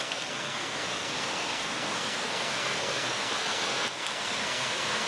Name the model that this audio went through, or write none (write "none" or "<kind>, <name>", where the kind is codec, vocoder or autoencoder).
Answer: codec, SNAC